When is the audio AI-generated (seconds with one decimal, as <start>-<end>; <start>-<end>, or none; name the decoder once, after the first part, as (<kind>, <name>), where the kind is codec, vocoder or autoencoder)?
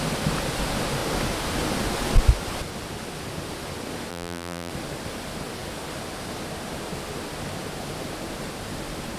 4.1-4.7 (vocoder, BigVGAN v2)